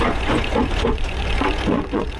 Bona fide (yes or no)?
no